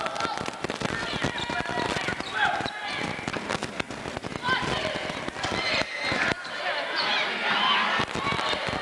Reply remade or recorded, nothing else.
recorded